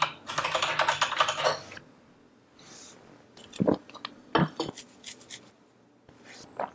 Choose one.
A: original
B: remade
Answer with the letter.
A